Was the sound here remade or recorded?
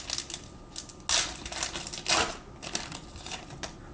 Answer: recorded